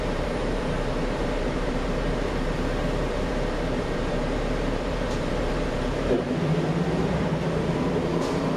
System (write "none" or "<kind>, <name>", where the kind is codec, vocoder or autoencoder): vocoder, BigVGAN v2